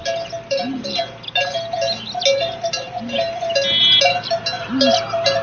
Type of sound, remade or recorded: recorded